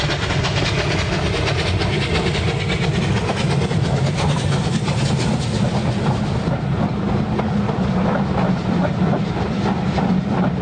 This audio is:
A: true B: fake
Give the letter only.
A